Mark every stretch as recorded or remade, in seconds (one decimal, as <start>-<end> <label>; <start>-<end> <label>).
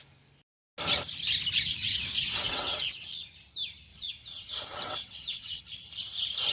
0.0-1.7 recorded; 1.7-3.1 remade; 3.1-3.9 recorded; 3.9-5.6 remade; 5.6-6.5 recorded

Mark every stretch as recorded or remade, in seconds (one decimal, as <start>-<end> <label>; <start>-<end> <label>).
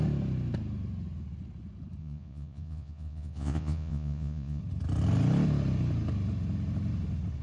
0.0-2.0 recorded; 2.0-4.6 remade; 4.6-7.4 recorded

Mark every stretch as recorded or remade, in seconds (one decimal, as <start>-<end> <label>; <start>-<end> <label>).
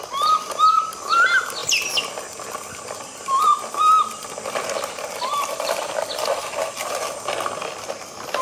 0.0-8.4 recorded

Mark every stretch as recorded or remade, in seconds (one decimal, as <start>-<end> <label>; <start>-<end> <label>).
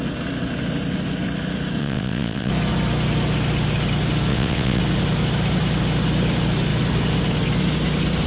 0.0-1.8 recorded; 1.8-2.5 remade; 2.5-4.3 recorded; 4.3-4.8 remade; 4.8-8.3 recorded